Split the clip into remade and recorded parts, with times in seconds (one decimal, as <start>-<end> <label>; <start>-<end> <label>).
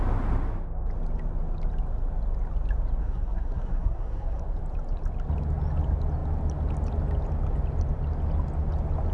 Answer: 0.0-3.0 recorded; 3.0-4.4 remade; 4.4-9.1 recorded